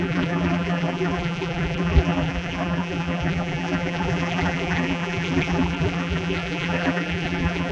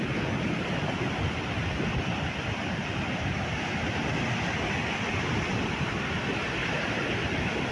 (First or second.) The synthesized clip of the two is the first